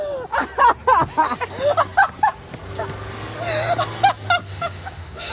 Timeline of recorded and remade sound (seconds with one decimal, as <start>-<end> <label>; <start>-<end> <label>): 0.0-4.4 recorded; 4.4-5.3 remade